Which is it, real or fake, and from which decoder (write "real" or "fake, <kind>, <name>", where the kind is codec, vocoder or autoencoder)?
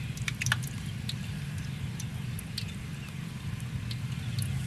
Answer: real